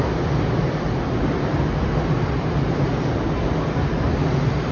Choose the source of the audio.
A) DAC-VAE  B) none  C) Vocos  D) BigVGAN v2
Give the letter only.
B